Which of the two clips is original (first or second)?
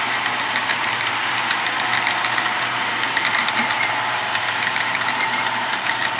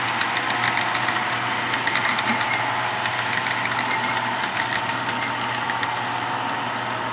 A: second